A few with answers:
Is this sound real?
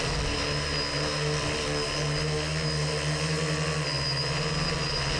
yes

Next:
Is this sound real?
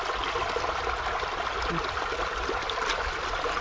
yes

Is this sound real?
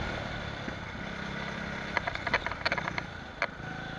yes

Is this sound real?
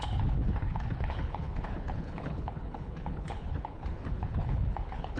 no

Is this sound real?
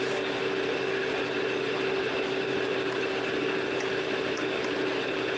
yes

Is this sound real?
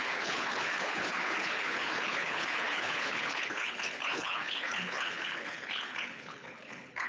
no